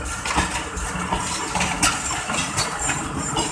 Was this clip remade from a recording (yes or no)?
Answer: no